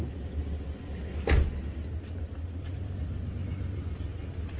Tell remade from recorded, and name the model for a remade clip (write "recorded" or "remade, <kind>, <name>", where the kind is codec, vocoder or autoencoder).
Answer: recorded